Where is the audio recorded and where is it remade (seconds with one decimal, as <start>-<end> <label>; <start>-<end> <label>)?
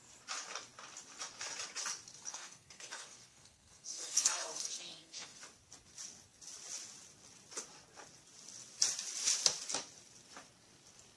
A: 0.0-2.3 recorded; 2.3-5.4 remade; 5.4-11.2 recorded